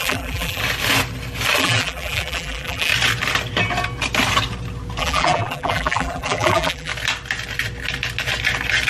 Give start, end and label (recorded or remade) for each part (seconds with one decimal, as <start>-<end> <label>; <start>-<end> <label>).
0.0-0.6 remade; 0.6-1.6 recorded; 1.6-2.9 remade; 2.9-5.0 recorded; 5.0-6.9 remade; 6.9-8.9 recorded